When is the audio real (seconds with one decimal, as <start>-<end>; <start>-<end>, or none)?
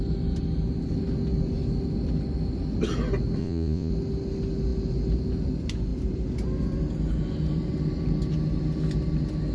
0.0-3.4; 3.9-9.5